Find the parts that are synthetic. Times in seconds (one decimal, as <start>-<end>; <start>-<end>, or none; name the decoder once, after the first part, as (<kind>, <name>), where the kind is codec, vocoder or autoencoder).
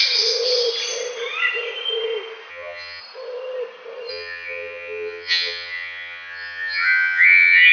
2.5-3.0 (vocoder, HiFi-GAN); 4.1-7.7